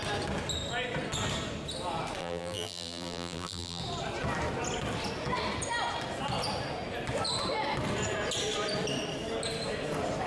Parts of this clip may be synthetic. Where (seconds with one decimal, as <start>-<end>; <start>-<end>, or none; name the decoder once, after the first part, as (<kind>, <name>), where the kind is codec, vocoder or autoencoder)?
2.2-3.8 (vocoder, BigVGAN v2)